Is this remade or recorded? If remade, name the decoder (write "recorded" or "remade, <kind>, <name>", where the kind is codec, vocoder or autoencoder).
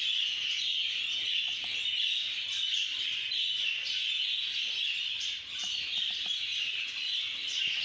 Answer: recorded